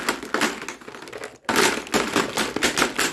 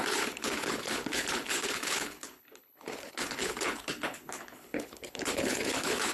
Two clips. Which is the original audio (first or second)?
first